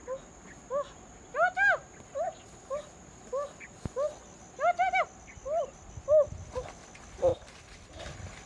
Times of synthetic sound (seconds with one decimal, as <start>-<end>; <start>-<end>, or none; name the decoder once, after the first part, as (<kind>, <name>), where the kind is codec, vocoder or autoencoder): none